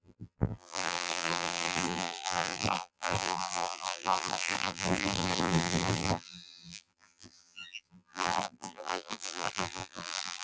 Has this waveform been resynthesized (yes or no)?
yes